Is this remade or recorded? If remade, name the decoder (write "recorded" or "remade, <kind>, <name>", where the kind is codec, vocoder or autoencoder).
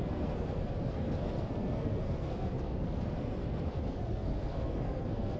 remade, codec, SNAC